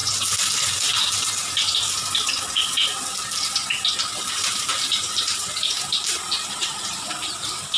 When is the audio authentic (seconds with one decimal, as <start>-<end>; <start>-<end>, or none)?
0.0-4.3